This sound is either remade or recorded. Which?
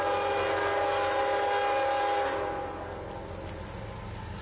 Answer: recorded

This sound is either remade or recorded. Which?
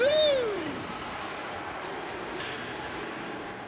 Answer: remade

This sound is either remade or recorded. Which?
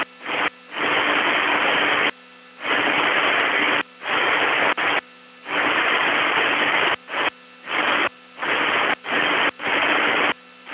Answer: recorded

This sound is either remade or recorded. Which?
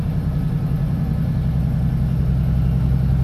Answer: recorded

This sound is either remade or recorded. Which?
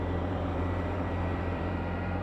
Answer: remade